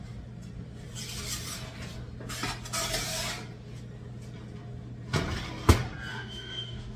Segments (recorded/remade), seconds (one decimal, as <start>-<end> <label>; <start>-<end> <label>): 0.0-6.1 recorded; 6.1-7.0 remade